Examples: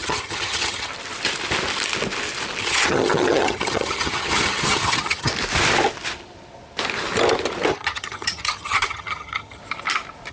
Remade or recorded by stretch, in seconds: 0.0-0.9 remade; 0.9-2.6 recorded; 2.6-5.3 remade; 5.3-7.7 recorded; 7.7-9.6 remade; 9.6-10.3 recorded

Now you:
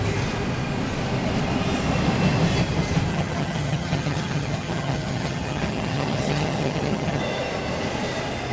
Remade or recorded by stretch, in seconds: 0.0-3.1 recorded; 3.1-7.2 remade; 7.2-8.5 recorded

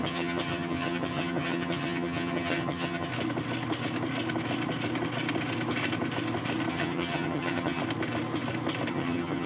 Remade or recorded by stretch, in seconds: 0.0-3.1 remade; 3.1-6.7 recorded; 6.7-7.8 remade; 7.8-8.9 recorded; 8.9-9.5 remade

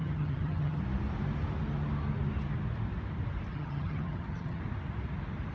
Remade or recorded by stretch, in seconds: 0.0-0.8 remade; 0.8-3.5 recorded; 3.5-4.6 remade; 4.6-5.5 recorded

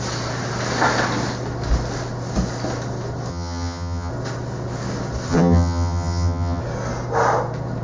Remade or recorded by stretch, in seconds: 0.0-3.3 recorded; 3.3-4.1 remade; 4.1-5.3 recorded; 5.3-6.6 remade; 6.6-7.8 recorded

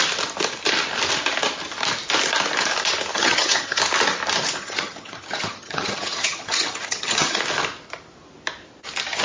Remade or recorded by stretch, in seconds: 0.0-3.1 recorded; 3.1-3.8 remade; 3.8-4.6 recorded; 4.6-7.4 remade; 7.4-9.2 recorded

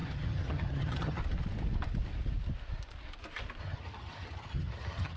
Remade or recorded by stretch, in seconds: 0.0-1.2 remade; 1.2-3.6 recorded; 3.6-5.2 remade